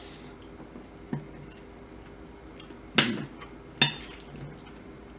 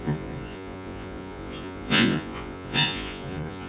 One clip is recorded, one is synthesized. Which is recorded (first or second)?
first